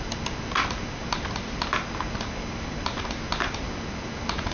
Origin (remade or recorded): recorded